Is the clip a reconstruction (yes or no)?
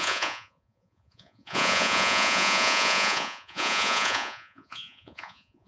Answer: yes